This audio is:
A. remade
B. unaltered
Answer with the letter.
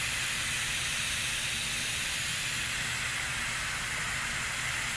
B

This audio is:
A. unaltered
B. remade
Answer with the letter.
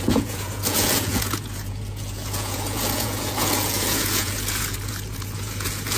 B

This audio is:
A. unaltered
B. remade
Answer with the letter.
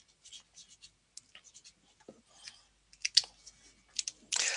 A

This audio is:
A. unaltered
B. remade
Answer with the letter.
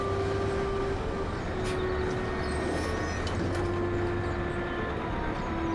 A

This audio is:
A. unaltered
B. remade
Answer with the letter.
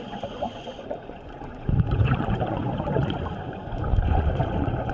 B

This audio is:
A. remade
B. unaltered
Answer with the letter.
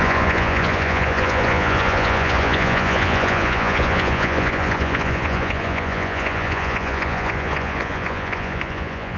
A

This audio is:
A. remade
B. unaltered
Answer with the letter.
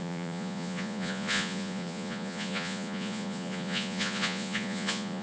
A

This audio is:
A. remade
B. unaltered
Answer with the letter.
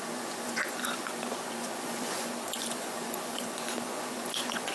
A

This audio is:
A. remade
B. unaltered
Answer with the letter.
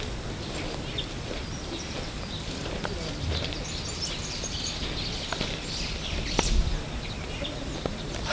B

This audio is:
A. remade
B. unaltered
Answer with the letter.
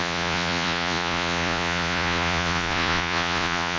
A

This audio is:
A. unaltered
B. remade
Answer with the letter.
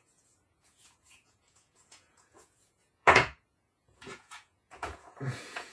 B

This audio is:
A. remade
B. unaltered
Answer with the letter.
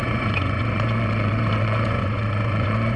A